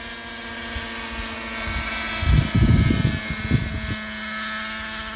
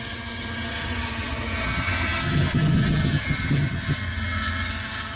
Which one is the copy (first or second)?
second